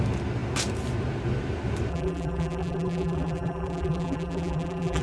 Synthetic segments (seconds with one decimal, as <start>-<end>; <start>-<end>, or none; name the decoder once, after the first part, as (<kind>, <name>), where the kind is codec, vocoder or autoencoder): 1.9-5.0 (vocoder, BigVGAN v2)